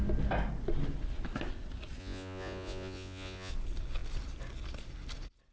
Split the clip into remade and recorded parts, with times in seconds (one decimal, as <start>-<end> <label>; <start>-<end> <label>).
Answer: 0.0-2.0 recorded; 2.0-3.5 remade; 3.5-5.5 recorded